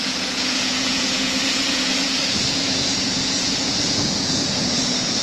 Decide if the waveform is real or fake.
fake